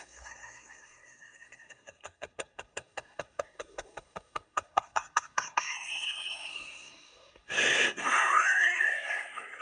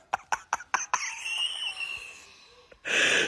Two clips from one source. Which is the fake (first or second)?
first